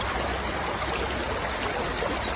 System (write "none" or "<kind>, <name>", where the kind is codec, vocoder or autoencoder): none